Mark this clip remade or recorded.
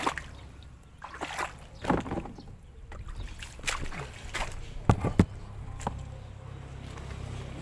recorded